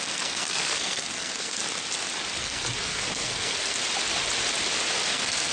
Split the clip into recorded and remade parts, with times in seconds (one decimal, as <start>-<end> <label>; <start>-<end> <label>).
0.0-1.6 remade; 1.6-2.4 recorded; 2.4-3.8 remade; 3.8-5.1 recorded; 5.1-5.5 remade